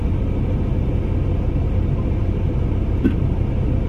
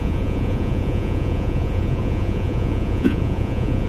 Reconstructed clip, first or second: second